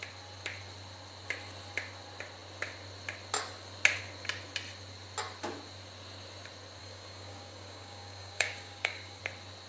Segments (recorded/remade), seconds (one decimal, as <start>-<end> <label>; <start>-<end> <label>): 0.0-6.8 recorded; 6.8-9.2 remade; 9.2-9.7 recorded